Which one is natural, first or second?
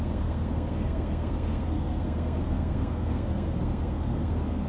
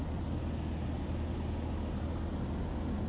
second